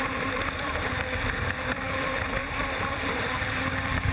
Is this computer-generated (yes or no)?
yes